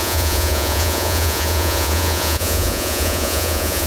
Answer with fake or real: fake